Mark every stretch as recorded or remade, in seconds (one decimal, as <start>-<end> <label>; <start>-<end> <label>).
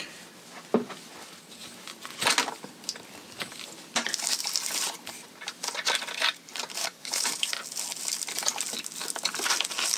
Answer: 0.0-6.8 recorded; 6.8-7.5 remade; 7.5-10.0 recorded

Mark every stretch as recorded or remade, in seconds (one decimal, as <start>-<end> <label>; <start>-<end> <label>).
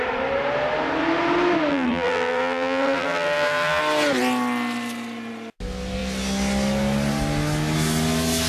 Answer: 0.0-1.7 recorded; 1.7-3.8 remade; 3.8-8.5 recorded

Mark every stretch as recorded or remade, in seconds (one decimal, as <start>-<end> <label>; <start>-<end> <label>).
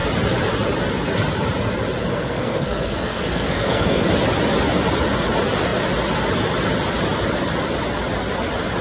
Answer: 0.0-2.1 recorded; 2.1-4.1 remade; 4.1-8.8 recorded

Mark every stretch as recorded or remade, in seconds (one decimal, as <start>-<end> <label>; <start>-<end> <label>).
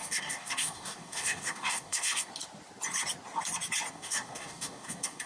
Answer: 0.0-2.3 remade; 2.3-3.9 recorded; 3.9-5.3 remade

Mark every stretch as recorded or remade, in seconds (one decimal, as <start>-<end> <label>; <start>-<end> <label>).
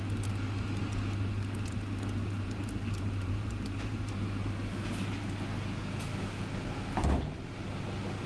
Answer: 0.0-2.2 recorded; 2.2-4.2 remade; 4.2-8.3 recorded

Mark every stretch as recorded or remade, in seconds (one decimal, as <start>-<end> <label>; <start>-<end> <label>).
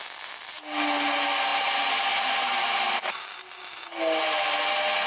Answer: 0.0-5.1 recorded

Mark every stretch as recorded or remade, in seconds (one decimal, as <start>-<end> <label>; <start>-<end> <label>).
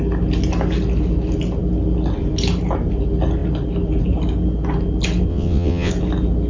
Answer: 0.0-5.3 recorded; 5.3-5.9 remade; 5.9-6.5 recorded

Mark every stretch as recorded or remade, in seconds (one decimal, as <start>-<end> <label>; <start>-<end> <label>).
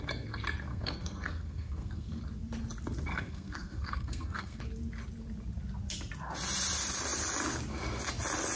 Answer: 0.0-0.7 recorded; 0.7-2.2 remade; 2.2-3.1 recorded; 3.1-4.6 remade; 4.6-8.6 recorded